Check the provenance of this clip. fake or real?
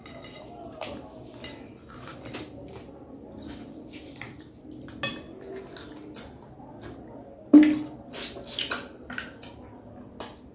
real